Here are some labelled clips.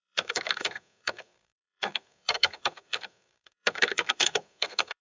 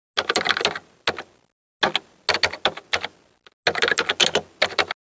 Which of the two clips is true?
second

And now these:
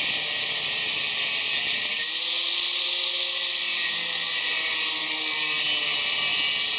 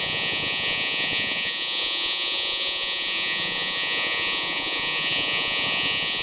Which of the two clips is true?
first